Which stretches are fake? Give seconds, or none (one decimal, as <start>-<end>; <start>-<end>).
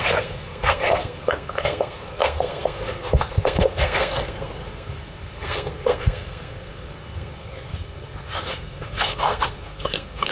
0.0-10.3